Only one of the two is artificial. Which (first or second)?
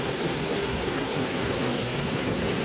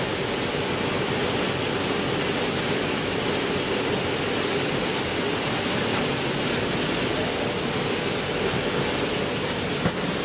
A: first